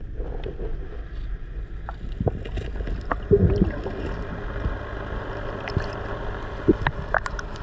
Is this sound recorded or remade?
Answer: recorded